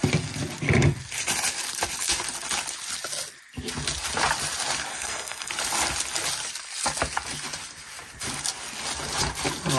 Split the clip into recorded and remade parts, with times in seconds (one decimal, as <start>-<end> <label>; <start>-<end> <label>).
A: 0.0-4.9 recorded; 4.9-5.5 remade; 5.5-9.8 recorded

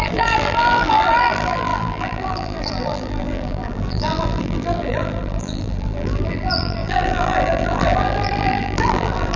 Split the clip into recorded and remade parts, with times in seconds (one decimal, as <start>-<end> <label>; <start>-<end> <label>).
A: 0.0-9.4 remade

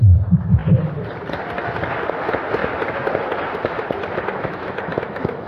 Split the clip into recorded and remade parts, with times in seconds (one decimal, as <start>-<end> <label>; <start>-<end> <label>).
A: 0.0-4.3 recorded; 4.3-5.5 remade

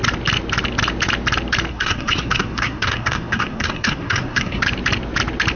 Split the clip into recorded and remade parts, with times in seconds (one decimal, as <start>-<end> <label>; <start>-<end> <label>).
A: 0.0-1.7 recorded; 1.7-4.6 remade; 4.6-5.6 recorded